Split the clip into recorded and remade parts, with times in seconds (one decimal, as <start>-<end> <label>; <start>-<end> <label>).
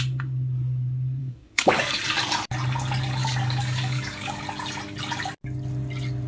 0.0-1.2 recorded; 1.2-2.0 remade; 2.0-3.2 recorded; 3.2-4.4 remade; 4.4-6.3 recorded